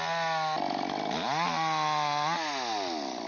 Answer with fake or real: real